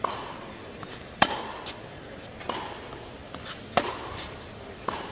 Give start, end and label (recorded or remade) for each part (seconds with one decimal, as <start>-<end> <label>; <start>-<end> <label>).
0.0-2.3 remade; 2.3-4.0 recorded; 4.0-5.1 remade